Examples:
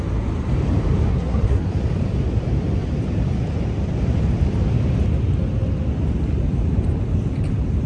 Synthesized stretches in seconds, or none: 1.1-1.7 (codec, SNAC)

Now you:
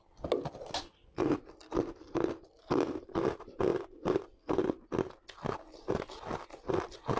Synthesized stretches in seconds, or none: none

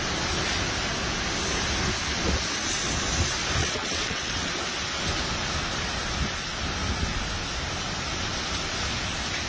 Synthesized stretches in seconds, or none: 3.6-4.5 (vocoder, WaveNeXt)

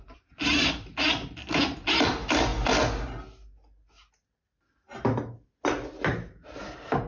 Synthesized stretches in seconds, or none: none

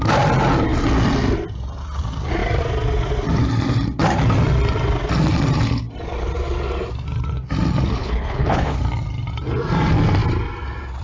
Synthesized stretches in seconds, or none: 8.0-8.8 (codec, HILCodec)

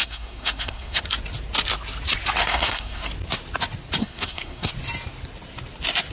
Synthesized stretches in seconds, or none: 0.0-1.0 (codec, SNAC); 2.4-3.1; 4.0-4.7